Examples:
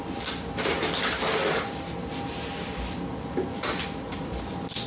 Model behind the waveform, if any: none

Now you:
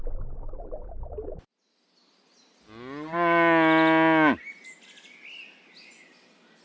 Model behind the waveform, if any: none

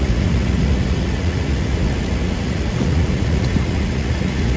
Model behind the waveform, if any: vocoder, Vocos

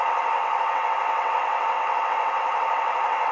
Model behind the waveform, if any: vocoder, WaveNeXt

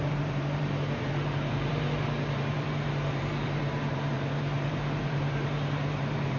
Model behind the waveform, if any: vocoder, BigVGAN v2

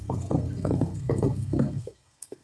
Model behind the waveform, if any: codec, SNAC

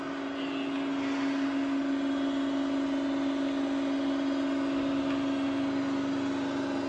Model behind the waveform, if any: none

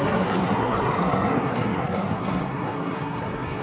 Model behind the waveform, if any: codec, SNAC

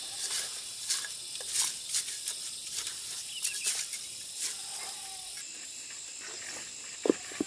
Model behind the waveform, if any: none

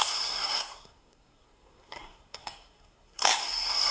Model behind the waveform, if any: codec, SNAC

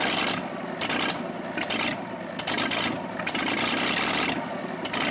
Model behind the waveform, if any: none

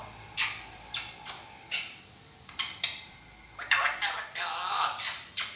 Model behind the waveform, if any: vocoder, BigVGAN v2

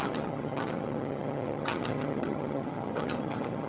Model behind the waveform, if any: vocoder, HiFi-GAN